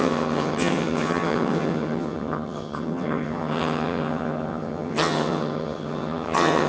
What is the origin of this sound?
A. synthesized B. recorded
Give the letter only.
A